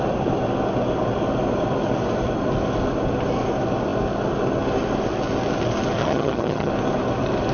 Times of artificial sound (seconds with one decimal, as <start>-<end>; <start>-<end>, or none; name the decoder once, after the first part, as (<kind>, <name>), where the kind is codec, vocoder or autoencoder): 6.0-6.7 (vocoder, HiFi-GAN)